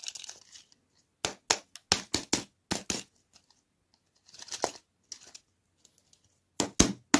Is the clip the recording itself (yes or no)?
yes